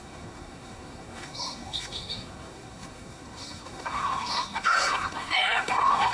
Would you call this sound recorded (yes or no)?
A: no